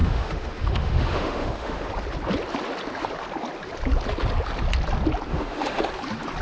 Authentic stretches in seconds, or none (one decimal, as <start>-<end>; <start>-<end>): 1.9-5.3; 5.8-6.4